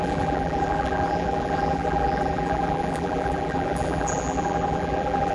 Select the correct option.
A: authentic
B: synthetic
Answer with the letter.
B